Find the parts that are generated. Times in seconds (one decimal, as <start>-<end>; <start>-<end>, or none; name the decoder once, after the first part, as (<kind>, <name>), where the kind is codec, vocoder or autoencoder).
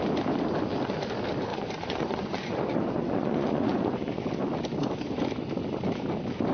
1.5-4.4 (vocoder, Vocos)